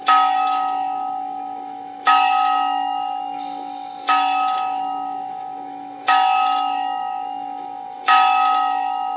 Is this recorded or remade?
remade